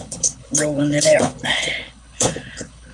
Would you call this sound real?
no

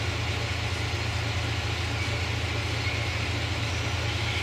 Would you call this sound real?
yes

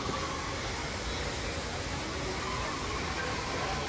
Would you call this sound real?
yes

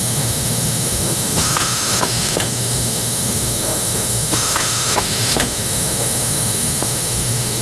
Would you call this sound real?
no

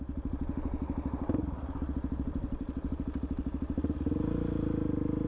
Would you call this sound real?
yes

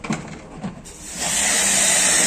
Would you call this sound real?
yes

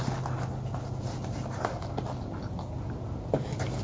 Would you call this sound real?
yes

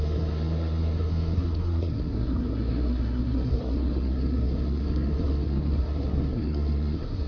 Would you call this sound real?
no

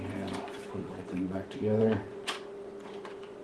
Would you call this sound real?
no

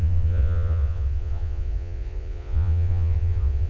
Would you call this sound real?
no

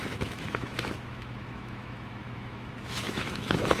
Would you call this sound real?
no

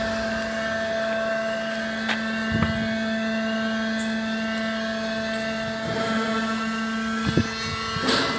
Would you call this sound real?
yes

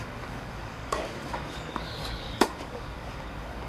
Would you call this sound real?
no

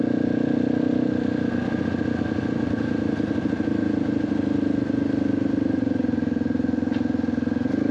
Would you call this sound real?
yes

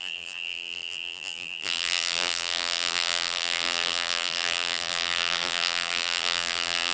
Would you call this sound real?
no